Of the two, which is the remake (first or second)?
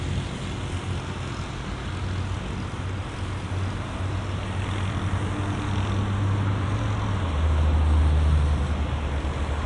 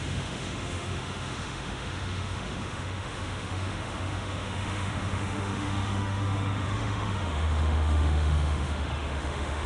second